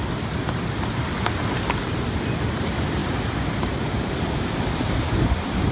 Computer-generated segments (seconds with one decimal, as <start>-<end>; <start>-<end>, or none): none